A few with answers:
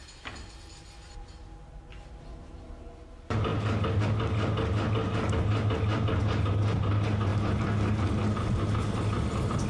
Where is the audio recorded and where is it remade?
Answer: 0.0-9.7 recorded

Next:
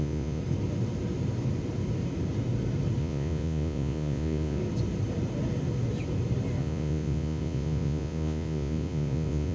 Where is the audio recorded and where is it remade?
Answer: 0.0-0.4 remade; 0.4-3.0 recorded; 3.0-4.6 remade; 4.6-6.6 recorded; 6.6-9.5 remade

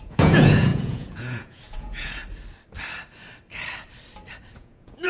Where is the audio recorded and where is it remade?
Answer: 0.0-2.2 remade; 2.2-4.5 recorded; 4.5-5.1 remade

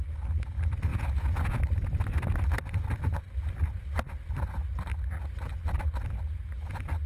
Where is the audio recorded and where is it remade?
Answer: 0.0-0.9 recorded; 0.9-1.6 remade; 1.6-7.1 recorded